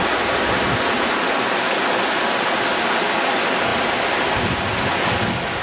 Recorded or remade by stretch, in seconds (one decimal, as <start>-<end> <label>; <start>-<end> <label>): 0.0-5.6 recorded